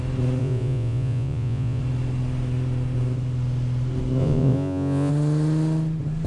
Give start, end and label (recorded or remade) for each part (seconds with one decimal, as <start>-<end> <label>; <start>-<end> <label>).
0.0-0.4 recorded; 0.4-1.8 remade; 1.8-4.2 recorded; 4.2-5.1 remade; 5.1-6.3 recorded